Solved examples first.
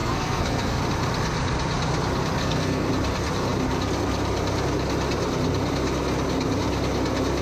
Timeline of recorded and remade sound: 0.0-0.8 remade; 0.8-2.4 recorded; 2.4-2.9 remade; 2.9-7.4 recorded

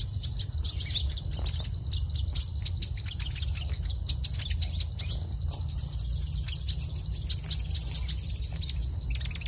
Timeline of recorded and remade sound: 0.0-9.5 recorded

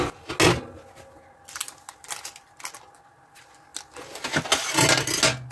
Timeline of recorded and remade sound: 0.0-5.5 recorded

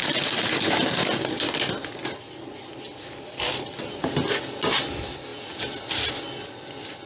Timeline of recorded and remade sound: 0.0-7.1 recorded

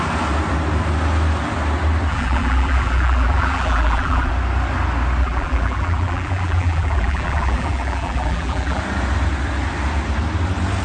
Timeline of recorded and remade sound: 0.0-2.1 recorded; 2.1-4.3 remade; 4.3-5.2 recorded; 5.2-8.8 remade; 8.8-10.8 recorded